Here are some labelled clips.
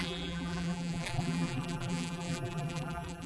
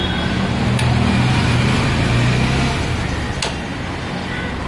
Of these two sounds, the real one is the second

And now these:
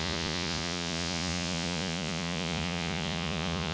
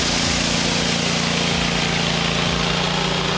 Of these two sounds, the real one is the second